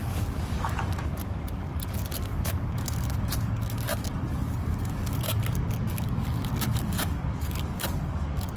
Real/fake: fake